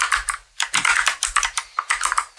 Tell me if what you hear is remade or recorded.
remade